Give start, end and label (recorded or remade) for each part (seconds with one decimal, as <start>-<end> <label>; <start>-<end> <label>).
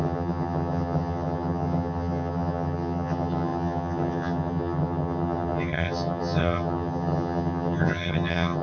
0.0-8.6 remade